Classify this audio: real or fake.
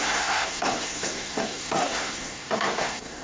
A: fake